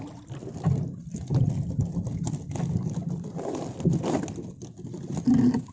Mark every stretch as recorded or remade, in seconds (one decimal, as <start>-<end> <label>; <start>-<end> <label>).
0.0-3.0 recorded; 3.0-3.7 remade; 3.7-5.7 recorded